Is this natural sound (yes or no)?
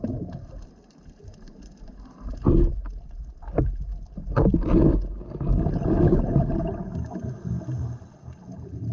yes